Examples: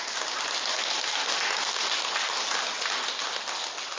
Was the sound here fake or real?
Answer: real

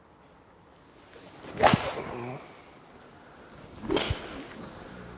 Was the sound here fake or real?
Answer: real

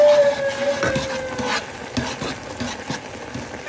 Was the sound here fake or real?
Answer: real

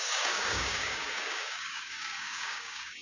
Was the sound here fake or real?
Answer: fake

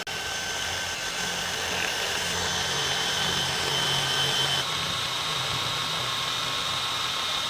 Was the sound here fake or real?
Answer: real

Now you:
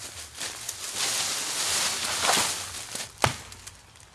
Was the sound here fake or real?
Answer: real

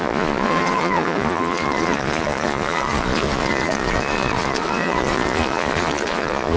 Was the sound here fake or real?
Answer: fake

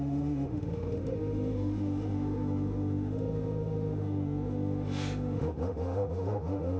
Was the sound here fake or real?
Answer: fake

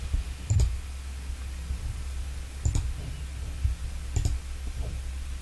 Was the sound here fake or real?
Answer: real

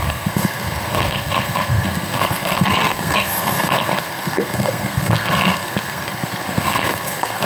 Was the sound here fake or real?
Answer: fake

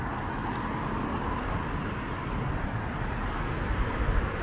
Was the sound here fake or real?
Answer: real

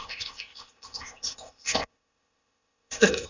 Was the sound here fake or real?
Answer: fake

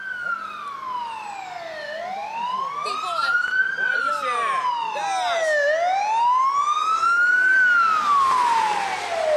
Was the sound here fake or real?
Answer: real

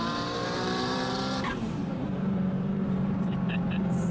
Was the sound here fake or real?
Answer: fake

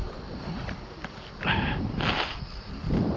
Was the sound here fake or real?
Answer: real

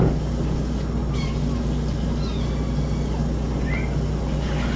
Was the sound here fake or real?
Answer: real